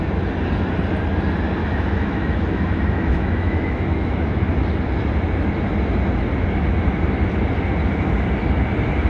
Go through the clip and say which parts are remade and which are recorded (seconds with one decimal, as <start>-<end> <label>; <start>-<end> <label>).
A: 0.0-1.6 recorded; 1.6-4.5 remade; 4.5-9.1 recorded